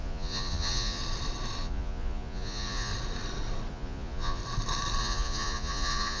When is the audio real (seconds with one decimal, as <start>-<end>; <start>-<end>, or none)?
1.0-1.6; 2.9-3.7; 4.4-5.0